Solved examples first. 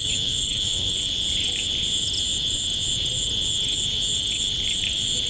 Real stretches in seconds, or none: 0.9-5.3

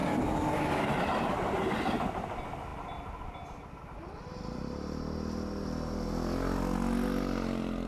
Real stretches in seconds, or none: 0.0-7.9

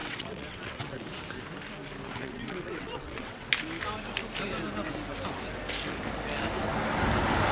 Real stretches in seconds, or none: 1.1-2.2; 3.4-7.5